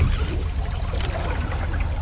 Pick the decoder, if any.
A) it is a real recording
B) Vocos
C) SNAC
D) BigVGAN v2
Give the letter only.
A